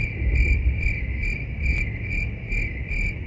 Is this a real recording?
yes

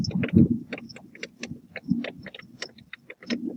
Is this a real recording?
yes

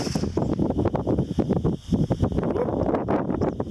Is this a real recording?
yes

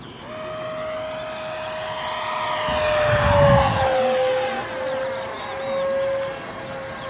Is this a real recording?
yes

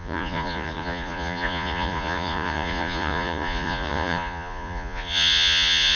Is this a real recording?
no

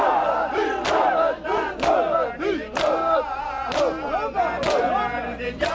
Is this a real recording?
yes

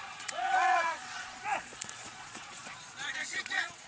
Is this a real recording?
no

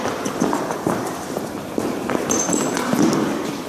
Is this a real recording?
yes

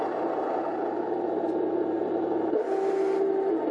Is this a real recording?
yes